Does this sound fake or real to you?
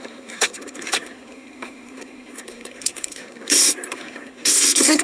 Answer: fake